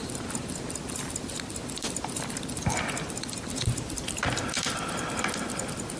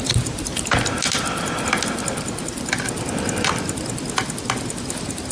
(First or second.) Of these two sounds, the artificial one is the first